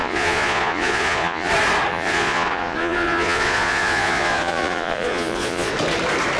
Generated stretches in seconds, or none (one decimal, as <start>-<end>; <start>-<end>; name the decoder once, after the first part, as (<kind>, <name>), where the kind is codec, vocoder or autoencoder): 0.0-1.5 (vocoder, Vocos); 1.9-5.7